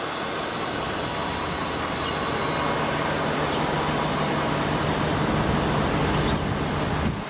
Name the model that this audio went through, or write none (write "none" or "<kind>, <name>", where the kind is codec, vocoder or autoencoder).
none